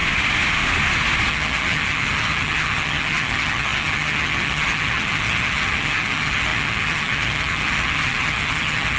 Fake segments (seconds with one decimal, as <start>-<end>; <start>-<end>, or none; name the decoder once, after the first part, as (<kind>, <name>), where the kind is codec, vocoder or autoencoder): 1.3-9.0 (vocoder, HiFi-GAN)